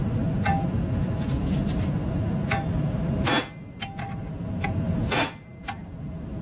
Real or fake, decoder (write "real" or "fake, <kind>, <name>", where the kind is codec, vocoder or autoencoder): real